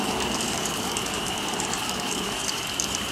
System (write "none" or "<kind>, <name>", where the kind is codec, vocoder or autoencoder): codec, DAC